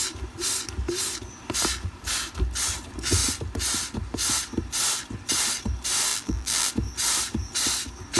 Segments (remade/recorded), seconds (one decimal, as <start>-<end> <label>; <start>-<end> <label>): 0.0-6.1 recorded; 6.1-6.7 remade; 6.7-8.2 recorded